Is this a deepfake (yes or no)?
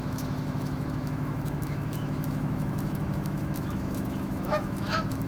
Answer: yes